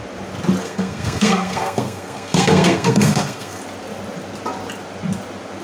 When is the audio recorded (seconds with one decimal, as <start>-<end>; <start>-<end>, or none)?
0.0-0.6; 3.6-5.6